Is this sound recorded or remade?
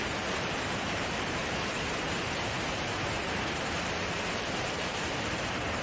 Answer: remade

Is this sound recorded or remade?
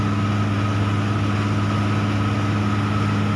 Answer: recorded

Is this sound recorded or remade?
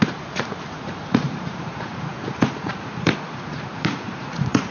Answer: remade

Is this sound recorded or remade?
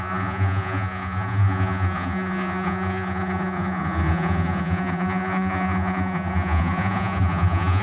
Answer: remade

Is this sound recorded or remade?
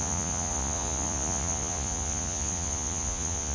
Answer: remade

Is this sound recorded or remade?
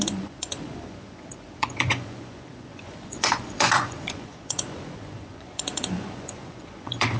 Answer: remade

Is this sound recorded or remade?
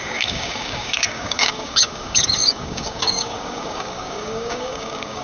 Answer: remade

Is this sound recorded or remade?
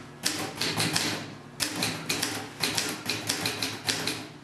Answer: recorded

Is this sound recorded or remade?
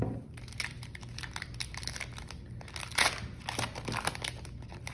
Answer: recorded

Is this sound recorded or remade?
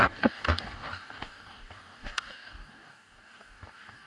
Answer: remade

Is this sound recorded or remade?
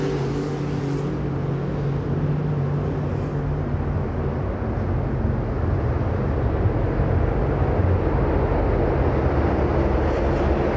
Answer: recorded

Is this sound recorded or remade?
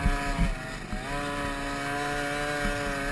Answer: recorded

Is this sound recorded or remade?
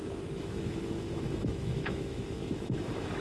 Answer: remade